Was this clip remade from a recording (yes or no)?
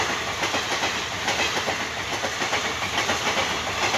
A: no